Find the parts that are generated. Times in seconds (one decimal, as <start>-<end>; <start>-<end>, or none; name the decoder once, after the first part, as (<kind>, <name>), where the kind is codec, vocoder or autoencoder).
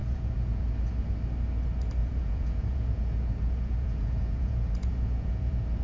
0.0-0.8 (vocoder, Vocos); 2.0-5.8